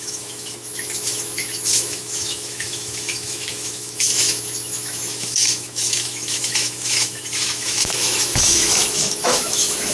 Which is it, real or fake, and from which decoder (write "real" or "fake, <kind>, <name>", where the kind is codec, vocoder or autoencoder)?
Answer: fake, autoencoder, DAC-VAE